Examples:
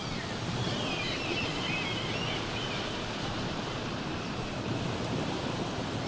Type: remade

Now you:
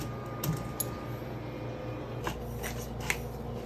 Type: recorded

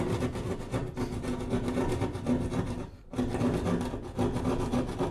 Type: recorded